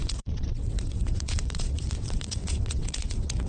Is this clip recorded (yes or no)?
no